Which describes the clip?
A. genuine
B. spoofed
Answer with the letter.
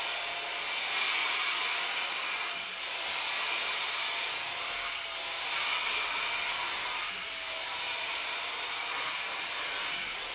A